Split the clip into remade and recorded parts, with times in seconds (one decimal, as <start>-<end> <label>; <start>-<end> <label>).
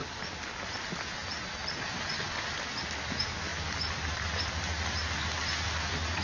0.0-6.2 recorded